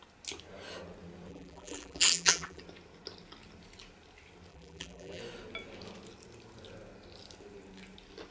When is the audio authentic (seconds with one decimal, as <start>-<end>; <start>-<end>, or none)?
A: 0.0-1.3; 2.6-4.5; 5.2-8.3